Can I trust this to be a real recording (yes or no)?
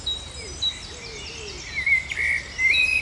yes